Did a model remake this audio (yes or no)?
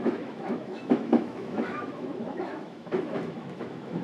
yes